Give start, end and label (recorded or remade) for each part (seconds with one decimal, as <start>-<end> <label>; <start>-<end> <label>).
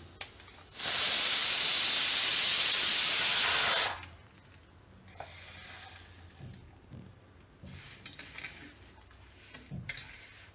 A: 0.0-10.5 recorded